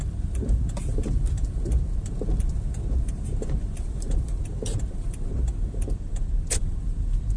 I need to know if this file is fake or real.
fake